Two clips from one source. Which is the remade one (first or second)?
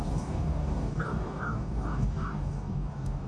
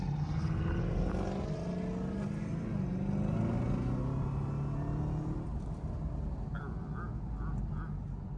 first